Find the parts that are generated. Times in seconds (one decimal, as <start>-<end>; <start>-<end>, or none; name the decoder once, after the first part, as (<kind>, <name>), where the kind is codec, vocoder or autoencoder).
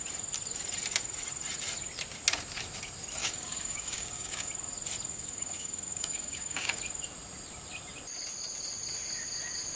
3.2-4.5 (codec, DAC); 5.1-6.8